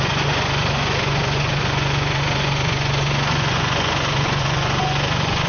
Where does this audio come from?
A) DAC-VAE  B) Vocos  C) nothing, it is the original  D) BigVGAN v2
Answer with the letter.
B